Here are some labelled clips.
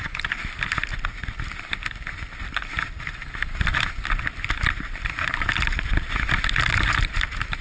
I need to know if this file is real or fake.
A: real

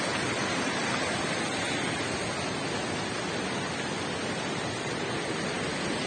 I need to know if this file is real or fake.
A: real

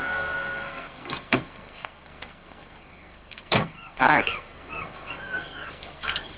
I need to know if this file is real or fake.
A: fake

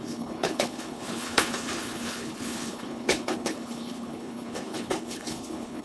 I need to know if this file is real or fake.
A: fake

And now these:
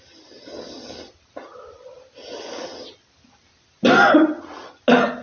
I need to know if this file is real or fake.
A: real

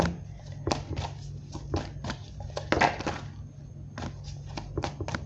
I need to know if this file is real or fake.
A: real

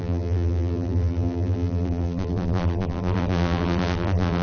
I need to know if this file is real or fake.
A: fake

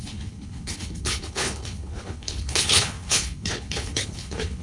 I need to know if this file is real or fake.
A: fake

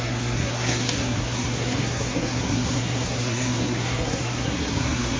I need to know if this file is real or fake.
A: fake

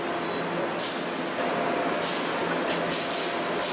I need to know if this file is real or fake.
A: real